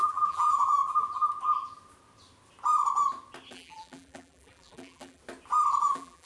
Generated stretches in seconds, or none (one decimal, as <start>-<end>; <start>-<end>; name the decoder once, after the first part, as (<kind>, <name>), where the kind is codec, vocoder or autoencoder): 0.0-0.8 (vocoder, BigVGAN v2); 3.5-5.2; 5.8-6.3